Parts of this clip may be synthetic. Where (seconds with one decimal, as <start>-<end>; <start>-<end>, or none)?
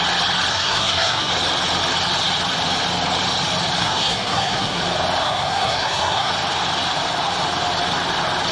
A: 0.5-1.3; 3.8-4.8; 5.2-6.3